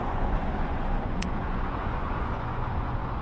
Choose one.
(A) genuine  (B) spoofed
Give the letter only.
B